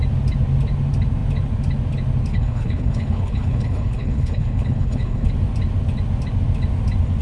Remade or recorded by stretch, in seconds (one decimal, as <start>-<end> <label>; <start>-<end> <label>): 0.0-2.3 recorded; 2.3-5.3 remade; 5.3-7.2 recorded

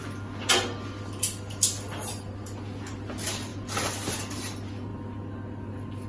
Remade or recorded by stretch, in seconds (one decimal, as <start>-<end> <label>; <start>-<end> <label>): 0.0-6.1 recorded

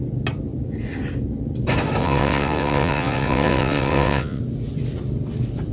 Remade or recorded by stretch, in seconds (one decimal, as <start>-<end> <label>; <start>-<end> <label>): 0.0-2.0 recorded; 2.0-4.4 remade; 4.4-5.7 recorded